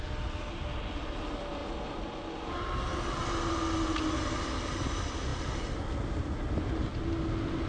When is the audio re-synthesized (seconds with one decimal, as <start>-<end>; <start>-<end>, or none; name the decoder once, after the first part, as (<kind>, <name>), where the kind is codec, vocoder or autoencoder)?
none